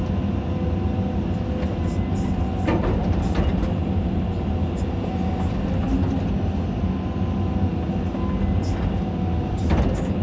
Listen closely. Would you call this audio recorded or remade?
recorded